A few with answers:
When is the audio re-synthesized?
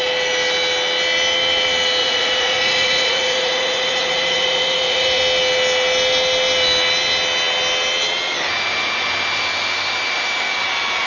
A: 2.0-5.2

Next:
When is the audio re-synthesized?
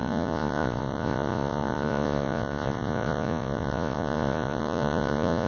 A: 0.0-5.5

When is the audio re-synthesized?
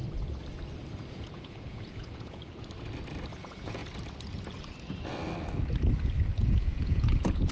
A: 1.1-2.4; 3.4-3.8; 6.4-7.5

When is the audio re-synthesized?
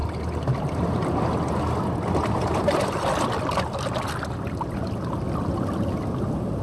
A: none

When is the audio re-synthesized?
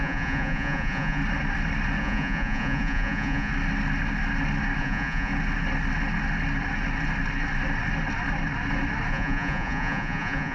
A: 0.0-1.2; 2.0-3.5; 4.8-5.3; 9.1-10.5